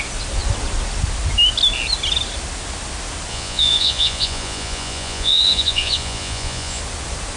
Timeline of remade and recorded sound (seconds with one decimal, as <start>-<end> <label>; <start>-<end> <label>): 0.0-3.3 recorded; 3.3-6.8 remade; 6.8-7.4 recorded